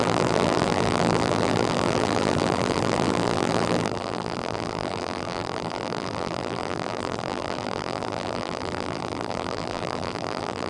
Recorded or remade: remade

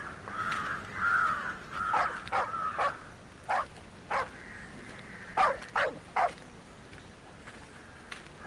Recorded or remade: recorded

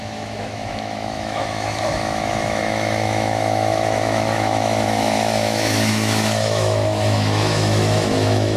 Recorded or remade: remade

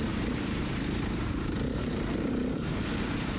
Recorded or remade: remade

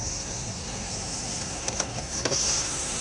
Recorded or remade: remade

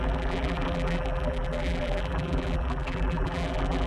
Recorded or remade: remade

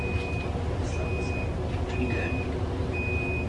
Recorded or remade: recorded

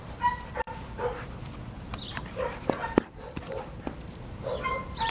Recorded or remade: recorded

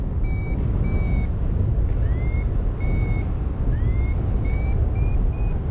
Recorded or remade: recorded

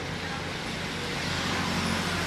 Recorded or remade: recorded